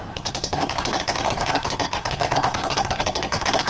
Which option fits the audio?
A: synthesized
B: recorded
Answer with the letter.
A